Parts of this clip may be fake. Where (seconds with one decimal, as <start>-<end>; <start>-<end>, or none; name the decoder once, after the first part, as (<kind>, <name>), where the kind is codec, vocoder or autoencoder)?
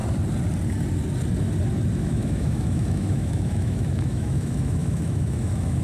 2.0-5.8 (autoencoder, DAC-VAE)